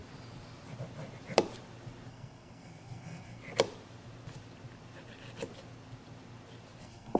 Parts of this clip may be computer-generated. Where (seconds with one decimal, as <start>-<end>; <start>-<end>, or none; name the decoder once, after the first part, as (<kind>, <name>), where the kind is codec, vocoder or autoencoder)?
2.1-3.4 (codec, SNAC); 6.8-7.2